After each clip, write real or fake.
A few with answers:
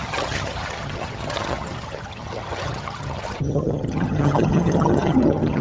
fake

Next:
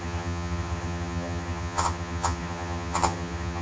fake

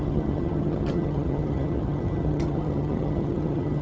fake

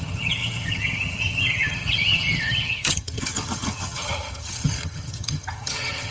fake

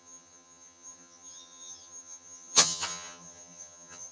fake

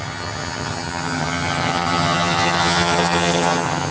fake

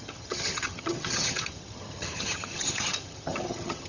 fake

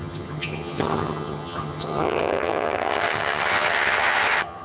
fake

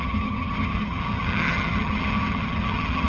fake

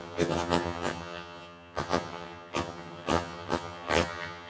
fake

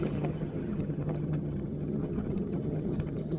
fake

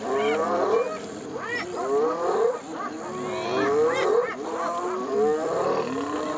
real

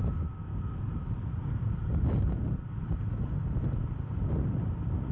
real